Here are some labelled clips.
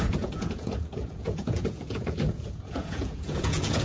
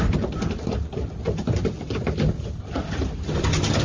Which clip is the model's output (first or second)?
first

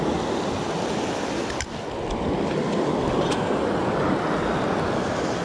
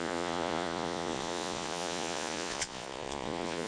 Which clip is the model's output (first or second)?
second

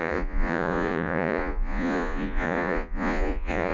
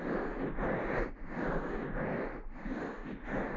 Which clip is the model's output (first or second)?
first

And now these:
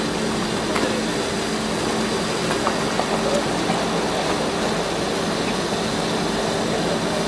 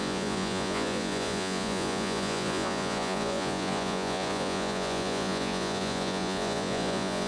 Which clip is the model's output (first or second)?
second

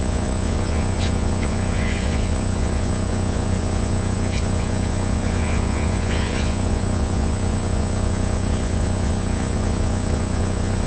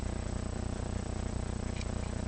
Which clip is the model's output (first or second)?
first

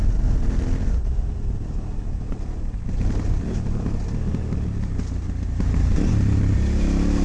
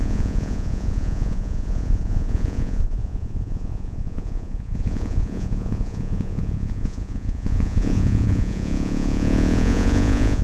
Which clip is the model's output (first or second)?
second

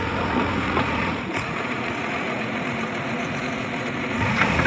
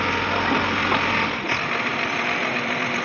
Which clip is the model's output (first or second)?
first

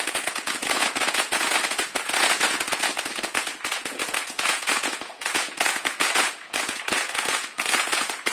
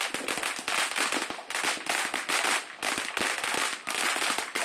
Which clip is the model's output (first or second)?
first